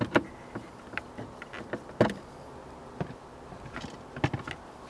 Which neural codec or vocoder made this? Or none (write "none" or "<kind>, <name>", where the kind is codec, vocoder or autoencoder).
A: none